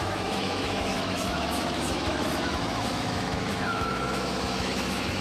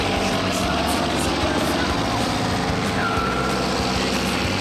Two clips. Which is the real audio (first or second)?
second